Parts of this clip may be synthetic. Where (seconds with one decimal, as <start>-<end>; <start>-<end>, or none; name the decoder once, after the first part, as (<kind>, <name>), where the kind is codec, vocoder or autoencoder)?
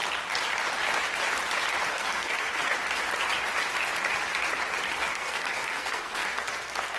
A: 1.9-2.7 (codec, SNAC); 4.9-7.0